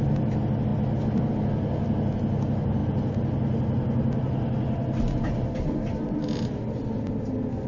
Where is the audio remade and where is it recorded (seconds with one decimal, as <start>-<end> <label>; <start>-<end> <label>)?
0.0-7.7 recorded